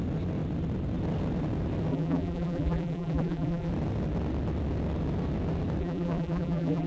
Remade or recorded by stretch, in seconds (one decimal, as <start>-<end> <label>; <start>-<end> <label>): 0.0-1.9 recorded; 1.9-3.7 remade; 3.7-5.8 recorded; 5.8-6.9 remade